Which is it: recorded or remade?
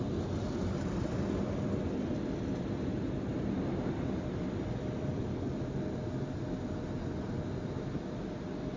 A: recorded